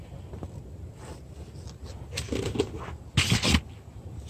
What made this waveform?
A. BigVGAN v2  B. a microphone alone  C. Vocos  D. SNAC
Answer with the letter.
B